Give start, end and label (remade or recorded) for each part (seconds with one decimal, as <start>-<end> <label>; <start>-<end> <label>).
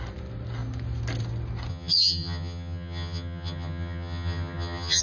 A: 0.0-1.7 recorded; 1.7-5.0 remade